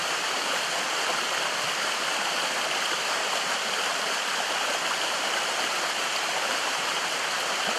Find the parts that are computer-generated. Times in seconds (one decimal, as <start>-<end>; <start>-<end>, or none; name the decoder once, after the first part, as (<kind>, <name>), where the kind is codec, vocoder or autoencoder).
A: none